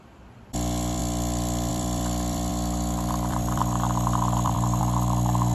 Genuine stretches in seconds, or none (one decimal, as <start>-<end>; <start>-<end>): 1.0-1.7